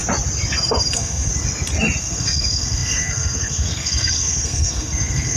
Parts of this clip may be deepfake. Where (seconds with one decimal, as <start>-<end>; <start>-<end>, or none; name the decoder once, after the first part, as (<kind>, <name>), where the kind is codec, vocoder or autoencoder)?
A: 0.9-1.3 (codec, SNAC); 2.0-5.4

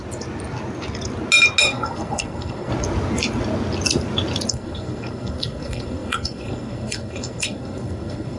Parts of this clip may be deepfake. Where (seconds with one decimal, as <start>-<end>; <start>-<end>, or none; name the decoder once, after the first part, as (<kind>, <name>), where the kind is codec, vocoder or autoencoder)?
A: 1.6-2.7 (codec, SNAC); 4.5-8.4

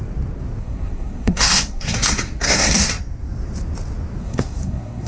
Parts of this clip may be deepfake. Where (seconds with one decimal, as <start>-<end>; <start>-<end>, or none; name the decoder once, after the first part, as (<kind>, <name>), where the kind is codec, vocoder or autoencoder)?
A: 0.6-2.9 (codec, SNAC); 4.2-5.1

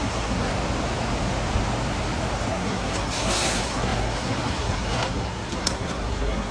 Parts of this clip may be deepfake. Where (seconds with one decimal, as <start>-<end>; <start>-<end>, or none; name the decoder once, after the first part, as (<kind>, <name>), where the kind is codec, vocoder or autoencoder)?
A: 0.0-0.5 (codec, SNAC); 2.5-6.5

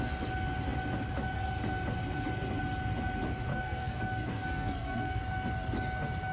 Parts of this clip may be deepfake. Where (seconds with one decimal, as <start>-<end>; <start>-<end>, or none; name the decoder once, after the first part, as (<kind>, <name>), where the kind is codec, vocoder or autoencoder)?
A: 3.5-5.2 (codec, SNAC)

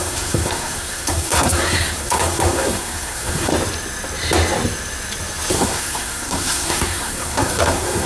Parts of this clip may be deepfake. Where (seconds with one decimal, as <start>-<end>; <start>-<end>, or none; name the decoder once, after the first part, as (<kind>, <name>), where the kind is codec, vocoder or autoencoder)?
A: 0.0-3.5 (codec, SNAC); 5.5-8.1

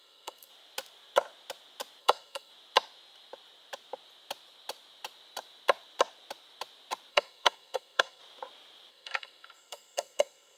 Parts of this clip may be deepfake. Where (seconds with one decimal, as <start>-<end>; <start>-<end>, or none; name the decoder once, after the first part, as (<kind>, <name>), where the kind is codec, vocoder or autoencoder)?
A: 0.0-0.5 (codec, SNAC); 2.0-2.5; 7.1-8.2; 8.9-10.6